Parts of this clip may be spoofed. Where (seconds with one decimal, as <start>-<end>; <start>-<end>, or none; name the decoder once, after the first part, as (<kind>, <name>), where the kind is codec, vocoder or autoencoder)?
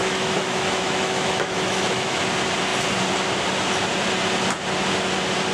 0.0-2.2 (autoencoder, DAC-VAE)